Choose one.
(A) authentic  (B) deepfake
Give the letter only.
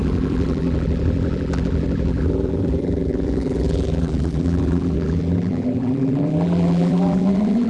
B